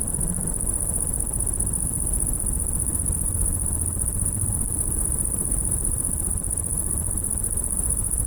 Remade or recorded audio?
remade